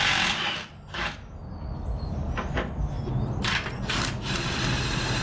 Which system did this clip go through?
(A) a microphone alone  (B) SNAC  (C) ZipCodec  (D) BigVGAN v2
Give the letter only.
A